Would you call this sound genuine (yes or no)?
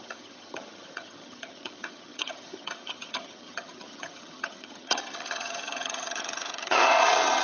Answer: no